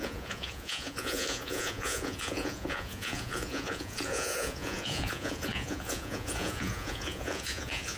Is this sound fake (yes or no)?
yes